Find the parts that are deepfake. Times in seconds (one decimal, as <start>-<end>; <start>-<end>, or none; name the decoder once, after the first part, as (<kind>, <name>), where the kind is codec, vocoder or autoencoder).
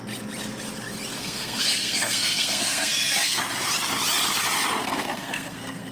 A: 1.2-3.4 (codec, SNAC); 4.8-5.9